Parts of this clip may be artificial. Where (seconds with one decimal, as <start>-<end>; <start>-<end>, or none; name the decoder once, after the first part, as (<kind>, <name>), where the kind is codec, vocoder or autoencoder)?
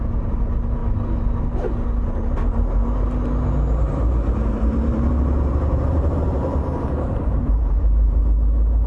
4.4-5.1 (vocoder, BigVGAN v2); 5.5-8.2